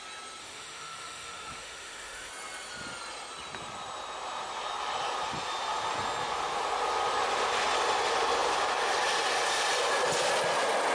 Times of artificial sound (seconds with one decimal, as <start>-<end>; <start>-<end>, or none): 0.4-2.3